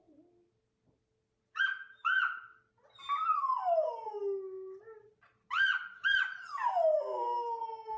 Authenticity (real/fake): real